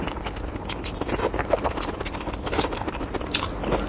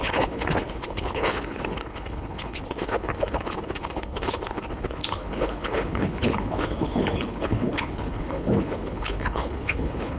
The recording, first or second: first